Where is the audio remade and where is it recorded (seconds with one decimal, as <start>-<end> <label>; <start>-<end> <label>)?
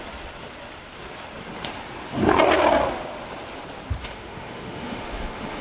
0.0-4.0 recorded; 4.0-5.6 remade